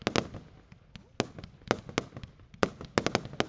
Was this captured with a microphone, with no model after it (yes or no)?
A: yes